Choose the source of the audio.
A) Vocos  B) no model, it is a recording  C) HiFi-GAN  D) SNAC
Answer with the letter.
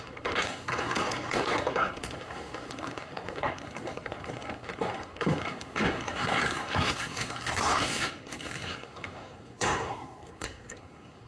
D